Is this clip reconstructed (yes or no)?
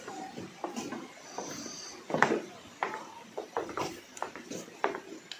yes